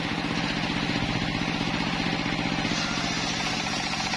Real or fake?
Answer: real